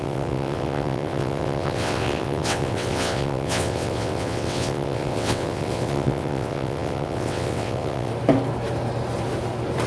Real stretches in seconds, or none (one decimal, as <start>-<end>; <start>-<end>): 8.1-9.9

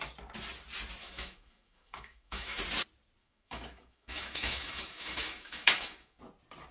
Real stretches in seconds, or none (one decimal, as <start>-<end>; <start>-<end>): 0.0-1.0; 2.6-3.2; 6.2-6.7

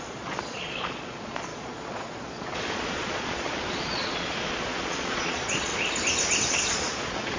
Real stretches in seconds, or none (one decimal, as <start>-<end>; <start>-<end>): 5.7-6.5

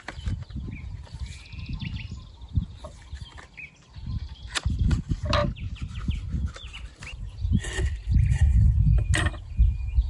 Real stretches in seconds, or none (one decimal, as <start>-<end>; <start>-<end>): 0.0-10.1

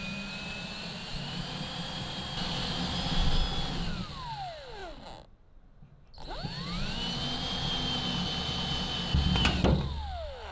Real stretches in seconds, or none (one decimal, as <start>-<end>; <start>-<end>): 0.0-1.1; 2.2-10.5

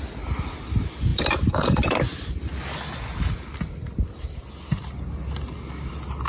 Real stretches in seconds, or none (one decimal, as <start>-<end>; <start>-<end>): 0.0-6.3

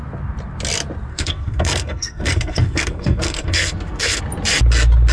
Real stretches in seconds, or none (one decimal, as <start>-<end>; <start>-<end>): 0.0-1.1; 4.2-5.1

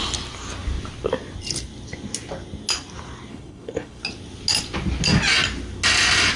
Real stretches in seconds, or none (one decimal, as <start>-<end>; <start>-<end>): 0.0-3.3; 4.0-6.4